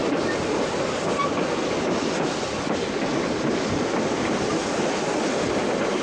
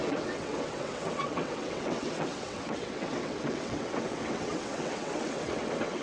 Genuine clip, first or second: first